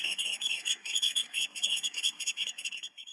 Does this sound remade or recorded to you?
remade